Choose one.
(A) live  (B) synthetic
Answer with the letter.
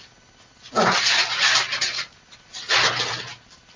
A